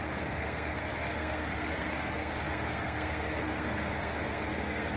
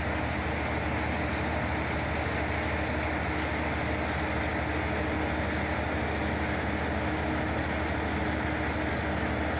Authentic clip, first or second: second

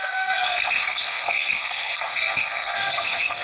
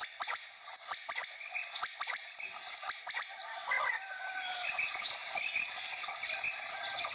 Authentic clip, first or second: second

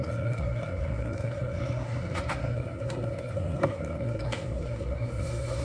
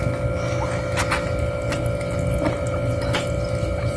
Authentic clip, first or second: second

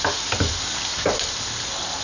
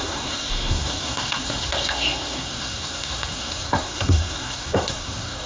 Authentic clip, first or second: first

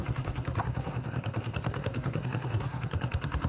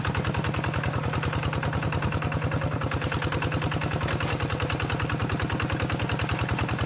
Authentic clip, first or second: second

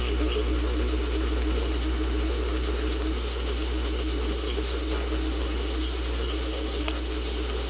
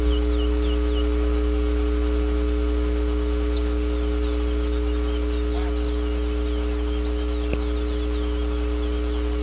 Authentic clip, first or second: second